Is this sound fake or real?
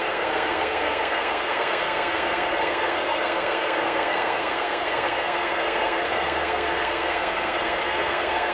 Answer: fake